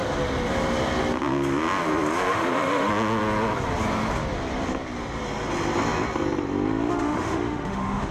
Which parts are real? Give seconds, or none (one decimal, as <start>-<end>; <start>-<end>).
0.0-2.3; 2.9-6.9